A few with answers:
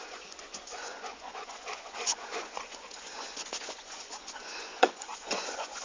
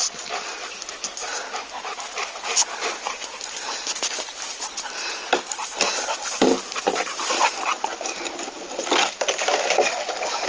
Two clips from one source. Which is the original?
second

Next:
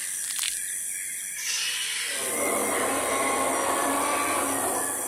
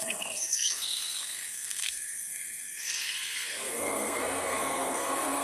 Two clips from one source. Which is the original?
first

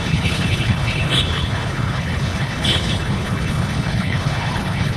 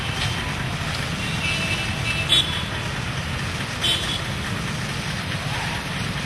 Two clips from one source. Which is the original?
second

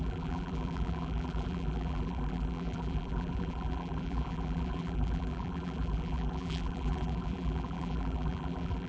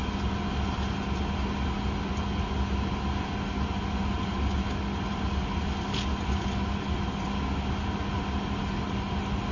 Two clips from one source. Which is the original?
second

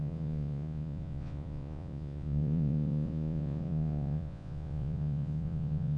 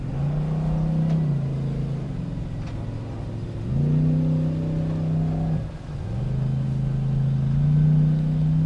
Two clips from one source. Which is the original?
second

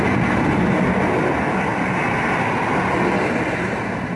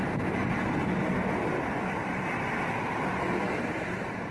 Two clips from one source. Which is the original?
first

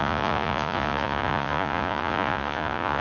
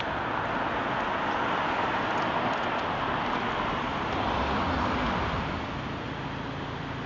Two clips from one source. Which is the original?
second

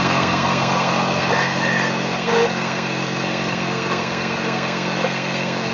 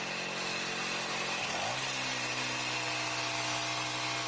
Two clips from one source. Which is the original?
second